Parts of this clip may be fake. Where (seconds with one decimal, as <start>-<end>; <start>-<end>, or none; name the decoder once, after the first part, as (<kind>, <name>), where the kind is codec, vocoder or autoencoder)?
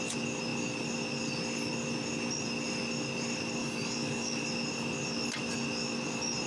3.6-4.5 (codec, DAC)